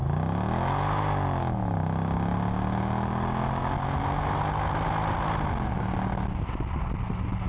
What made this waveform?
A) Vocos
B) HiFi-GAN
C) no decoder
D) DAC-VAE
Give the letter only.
C